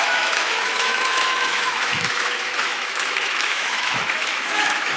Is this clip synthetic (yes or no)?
yes